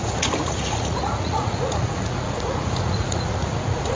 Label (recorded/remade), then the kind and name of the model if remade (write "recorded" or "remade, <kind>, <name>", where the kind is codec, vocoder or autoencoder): remade, vocoder, Vocos